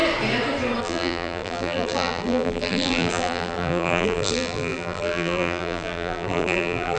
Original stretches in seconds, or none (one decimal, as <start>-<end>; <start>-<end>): 0.0-0.8